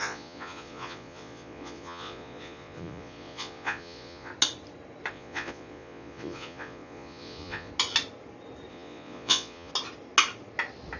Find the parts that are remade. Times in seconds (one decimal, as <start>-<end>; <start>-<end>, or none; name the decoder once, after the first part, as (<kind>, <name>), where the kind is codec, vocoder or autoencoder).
0.0-4.3 (vocoder, Vocos); 5.1-7.7; 8.7-9.7